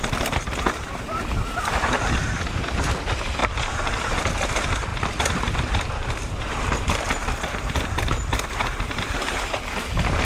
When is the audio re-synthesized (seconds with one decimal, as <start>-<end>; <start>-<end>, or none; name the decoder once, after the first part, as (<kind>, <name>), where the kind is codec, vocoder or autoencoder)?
3.4-4.3 (vocoder, BigVGAN v2); 4.9-9.6